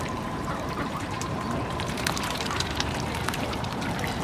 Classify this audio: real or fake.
fake